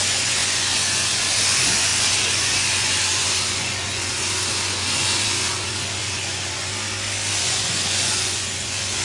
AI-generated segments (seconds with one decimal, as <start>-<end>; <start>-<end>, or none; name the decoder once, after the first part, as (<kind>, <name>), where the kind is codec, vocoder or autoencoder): 0.0-6.7 (vocoder, Vocos); 7.4-9.0